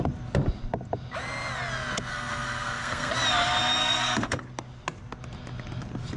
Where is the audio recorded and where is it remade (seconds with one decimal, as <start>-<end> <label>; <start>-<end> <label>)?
0.0-2.1 recorded; 2.1-3.1 remade; 3.1-3.8 recorded; 3.8-4.4 remade; 4.4-6.2 recorded